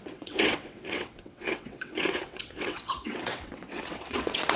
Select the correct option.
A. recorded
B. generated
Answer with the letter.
B